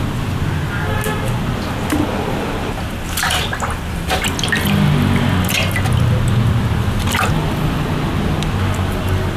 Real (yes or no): yes